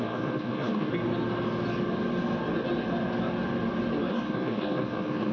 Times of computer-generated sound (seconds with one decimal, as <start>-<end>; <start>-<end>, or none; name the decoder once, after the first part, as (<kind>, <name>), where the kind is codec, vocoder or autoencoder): 0.0-0.9 (codec, SNAC); 4.1-5.3